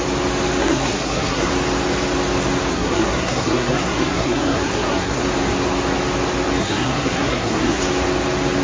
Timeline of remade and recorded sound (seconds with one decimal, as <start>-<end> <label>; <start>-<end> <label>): 0.0-0.6 recorded; 0.6-1.5 remade; 1.5-2.7 recorded; 2.7-5.2 remade; 5.2-6.6 recorded; 6.6-7.8 remade; 7.8-8.6 recorded